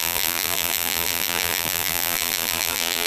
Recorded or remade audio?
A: remade